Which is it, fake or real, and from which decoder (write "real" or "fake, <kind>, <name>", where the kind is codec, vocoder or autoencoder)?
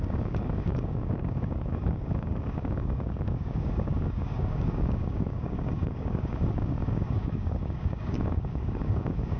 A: fake, codec, DAC